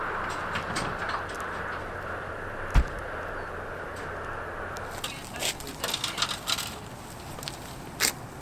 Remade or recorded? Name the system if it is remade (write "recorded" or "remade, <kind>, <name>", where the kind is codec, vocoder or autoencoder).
recorded